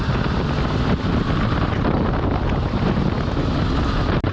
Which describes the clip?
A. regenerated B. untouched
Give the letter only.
B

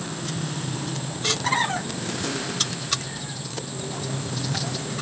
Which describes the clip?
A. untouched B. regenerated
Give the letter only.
B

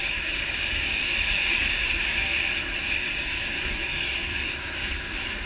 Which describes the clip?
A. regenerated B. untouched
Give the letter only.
A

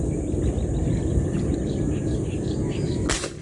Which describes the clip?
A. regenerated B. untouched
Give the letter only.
B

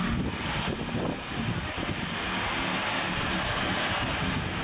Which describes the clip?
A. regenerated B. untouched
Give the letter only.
B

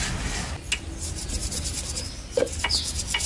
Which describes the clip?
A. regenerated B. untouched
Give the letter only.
B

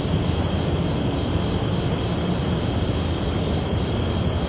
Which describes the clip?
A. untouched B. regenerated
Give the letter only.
A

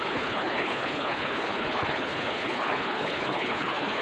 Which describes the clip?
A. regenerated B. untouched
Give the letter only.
A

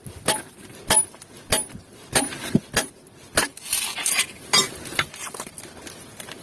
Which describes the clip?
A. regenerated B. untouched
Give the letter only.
B